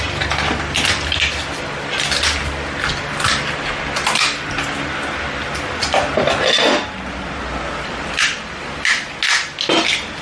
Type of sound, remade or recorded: recorded